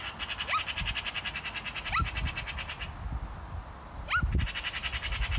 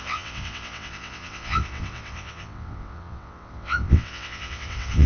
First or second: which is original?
first